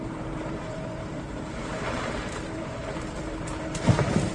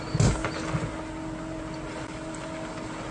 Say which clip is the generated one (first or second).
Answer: first